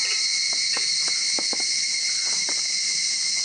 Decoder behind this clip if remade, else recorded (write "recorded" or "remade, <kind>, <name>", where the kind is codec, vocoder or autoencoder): recorded